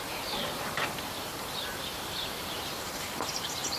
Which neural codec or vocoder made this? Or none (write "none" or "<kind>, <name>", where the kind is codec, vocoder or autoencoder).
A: vocoder, BigVGAN v2